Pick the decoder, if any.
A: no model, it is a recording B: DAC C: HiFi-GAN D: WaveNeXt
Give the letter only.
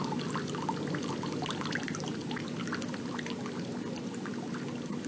A